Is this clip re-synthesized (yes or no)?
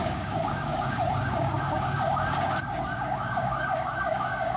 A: yes